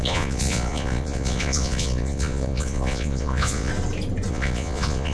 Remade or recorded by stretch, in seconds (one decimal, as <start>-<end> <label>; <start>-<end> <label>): 0.0-3.7 remade; 3.7-4.3 recorded; 4.3-5.1 remade